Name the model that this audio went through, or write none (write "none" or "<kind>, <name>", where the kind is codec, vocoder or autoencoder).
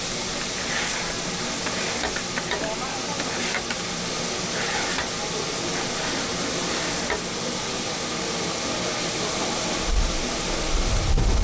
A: none